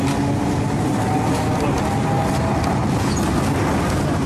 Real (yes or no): yes